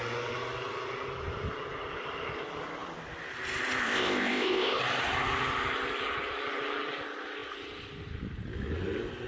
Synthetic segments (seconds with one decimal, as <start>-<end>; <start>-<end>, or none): 3.8-4.8